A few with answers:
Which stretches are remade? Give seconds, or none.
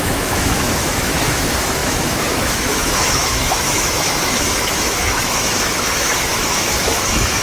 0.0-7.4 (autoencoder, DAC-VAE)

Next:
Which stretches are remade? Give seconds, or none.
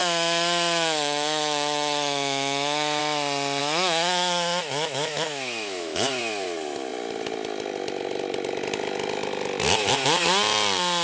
0.0-3.0 (autoencoder, DAC-VAE); 3.6-6.2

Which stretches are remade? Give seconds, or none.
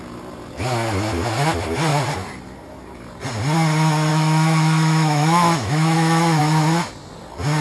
4.1-6.4 (autoencoder, DAC-VAE)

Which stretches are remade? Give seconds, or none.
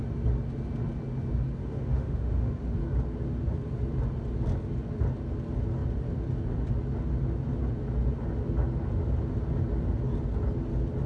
1.6-2.5 (autoencoder, DAC-VAE)